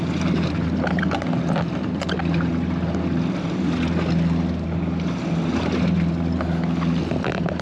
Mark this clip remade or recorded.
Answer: recorded